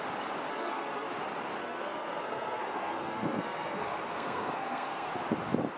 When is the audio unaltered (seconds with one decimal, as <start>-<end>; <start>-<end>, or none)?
0.0-0.5; 1.1-1.6; 5.1-5.8

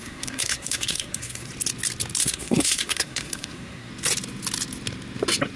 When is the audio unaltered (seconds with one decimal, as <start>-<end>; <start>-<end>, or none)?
1.5-2.2; 3.9-5.6

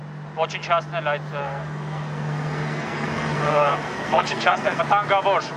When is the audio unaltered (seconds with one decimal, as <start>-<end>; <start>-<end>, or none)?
0.0-1.4; 4.8-5.6

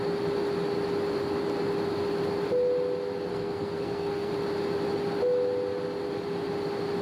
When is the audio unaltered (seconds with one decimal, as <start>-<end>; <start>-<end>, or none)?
0.0-3.3; 4.3-7.0